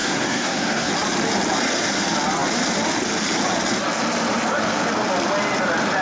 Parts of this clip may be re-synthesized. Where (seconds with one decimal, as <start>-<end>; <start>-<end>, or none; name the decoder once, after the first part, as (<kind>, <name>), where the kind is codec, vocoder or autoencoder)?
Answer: 0.0-0.9 (codec, SNAC)

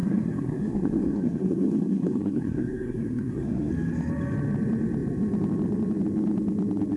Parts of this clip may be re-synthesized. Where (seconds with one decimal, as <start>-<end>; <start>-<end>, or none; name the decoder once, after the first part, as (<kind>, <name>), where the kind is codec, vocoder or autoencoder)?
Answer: 0.0-3.7 (codec, SNAC)

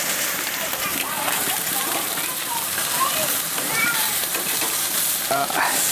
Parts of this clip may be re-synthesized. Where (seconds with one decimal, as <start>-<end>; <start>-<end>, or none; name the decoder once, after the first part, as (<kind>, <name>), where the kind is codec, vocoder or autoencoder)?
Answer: 0.0-5.9 (vocoder, BigVGAN v2)